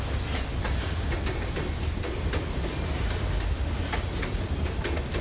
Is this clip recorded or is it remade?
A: recorded